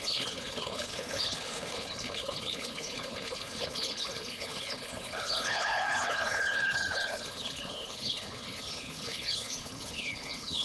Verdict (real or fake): fake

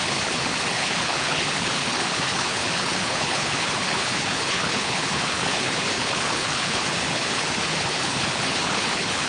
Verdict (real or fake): fake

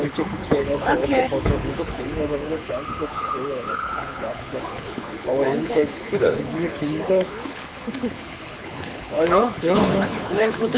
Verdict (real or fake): fake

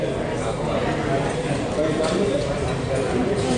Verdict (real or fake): real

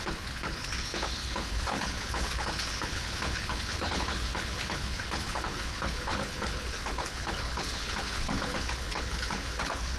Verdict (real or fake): fake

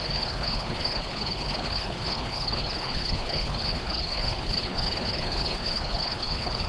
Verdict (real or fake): fake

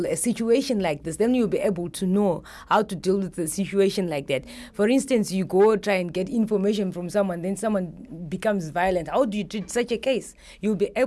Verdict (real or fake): real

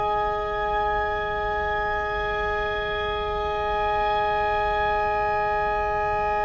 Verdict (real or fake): real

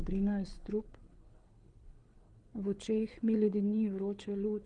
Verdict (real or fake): fake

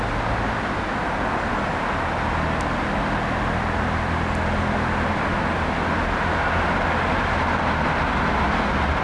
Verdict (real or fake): real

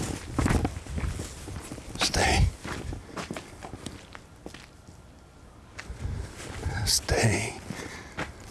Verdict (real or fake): real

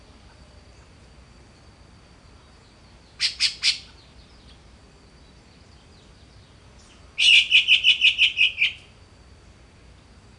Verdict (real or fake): real